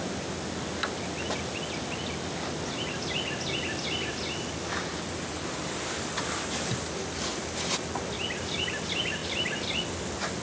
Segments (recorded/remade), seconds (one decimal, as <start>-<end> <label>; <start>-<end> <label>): 0.0-10.4 recorded